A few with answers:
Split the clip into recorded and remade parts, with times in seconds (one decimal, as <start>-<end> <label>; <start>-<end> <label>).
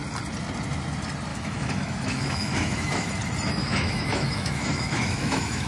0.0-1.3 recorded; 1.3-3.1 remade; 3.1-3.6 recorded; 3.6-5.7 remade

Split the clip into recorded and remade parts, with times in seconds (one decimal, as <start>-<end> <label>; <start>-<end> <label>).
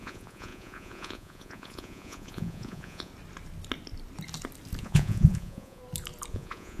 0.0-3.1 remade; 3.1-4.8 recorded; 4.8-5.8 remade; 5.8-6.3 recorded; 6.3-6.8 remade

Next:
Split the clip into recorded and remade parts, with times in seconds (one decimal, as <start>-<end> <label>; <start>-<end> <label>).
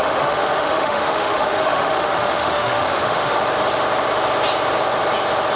0.0-3.4 remade; 3.4-5.6 recorded